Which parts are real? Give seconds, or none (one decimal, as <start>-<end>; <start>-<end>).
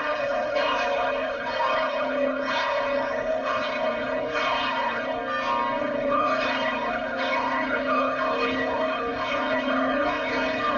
5.2-5.8